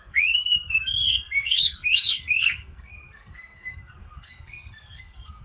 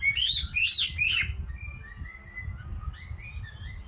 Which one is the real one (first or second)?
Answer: second